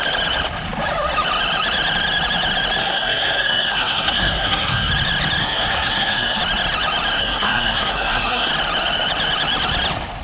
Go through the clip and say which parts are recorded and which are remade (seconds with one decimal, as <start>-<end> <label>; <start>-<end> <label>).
0.0-2.8 recorded; 2.8-4.9 remade; 4.9-5.4 recorded; 5.4-6.4 remade; 6.4-7.2 recorded; 7.2-8.5 remade; 8.5-10.2 recorded